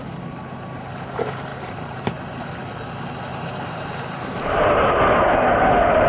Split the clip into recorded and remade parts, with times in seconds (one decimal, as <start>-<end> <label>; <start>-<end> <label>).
0.0-1.5 recorded; 1.5-2.3 remade; 2.3-3.3 recorded; 3.3-5.0 remade; 5.0-6.1 recorded